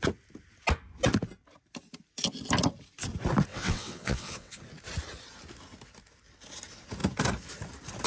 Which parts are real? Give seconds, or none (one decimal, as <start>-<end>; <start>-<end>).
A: 0.0-3.5; 4.6-8.1